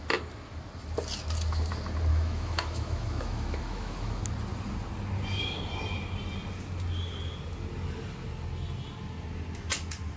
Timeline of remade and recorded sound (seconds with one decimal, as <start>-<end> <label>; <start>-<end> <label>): 0.0-2.1 recorded; 2.1-4.2 remade; 4.2-10.2 recorded